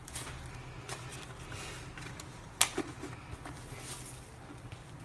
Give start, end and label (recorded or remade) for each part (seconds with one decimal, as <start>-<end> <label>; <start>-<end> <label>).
0.0-5.0 recorded